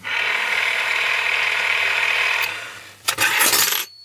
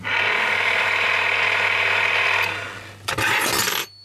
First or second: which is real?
second